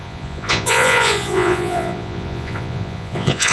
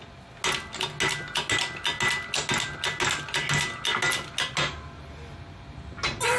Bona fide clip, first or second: second